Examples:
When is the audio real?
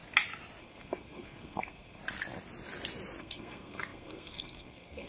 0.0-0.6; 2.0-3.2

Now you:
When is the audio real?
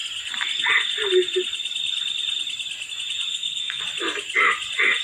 0.0-3.3; 3.8-5.0